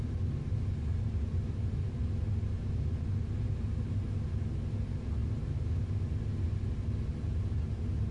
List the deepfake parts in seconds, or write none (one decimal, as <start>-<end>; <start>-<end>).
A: none